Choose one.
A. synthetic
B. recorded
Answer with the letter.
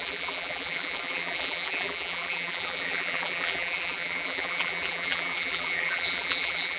A